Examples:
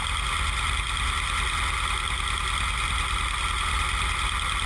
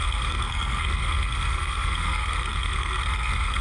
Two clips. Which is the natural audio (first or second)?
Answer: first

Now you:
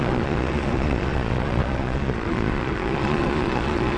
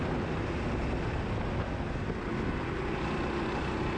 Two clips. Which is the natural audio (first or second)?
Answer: second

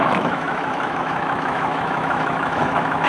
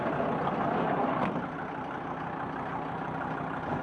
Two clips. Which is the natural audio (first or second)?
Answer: second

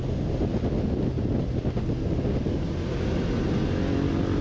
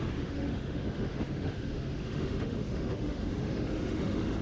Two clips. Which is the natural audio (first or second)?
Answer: first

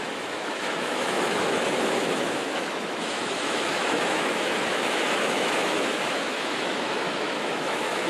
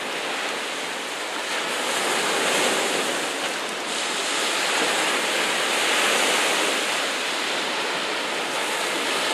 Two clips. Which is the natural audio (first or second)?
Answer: second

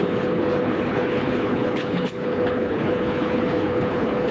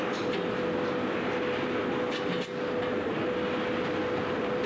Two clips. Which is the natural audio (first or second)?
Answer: second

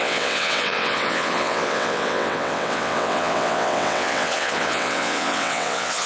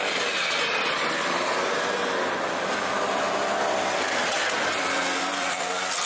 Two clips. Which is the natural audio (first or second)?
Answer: second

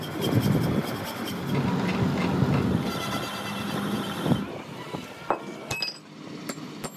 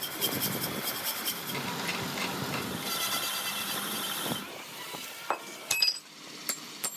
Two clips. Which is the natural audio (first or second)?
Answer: first